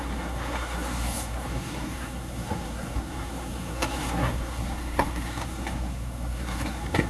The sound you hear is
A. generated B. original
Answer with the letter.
A